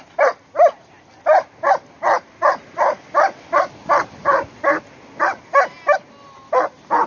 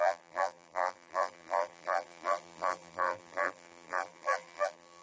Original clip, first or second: first